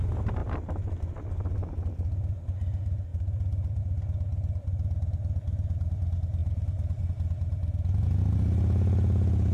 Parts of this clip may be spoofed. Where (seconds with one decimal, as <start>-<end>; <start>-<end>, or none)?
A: 0.4-1.0; 3.1-3.8; 6.4-7.0